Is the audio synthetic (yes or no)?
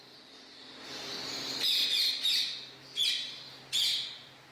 no